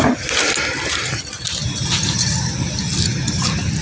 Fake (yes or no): no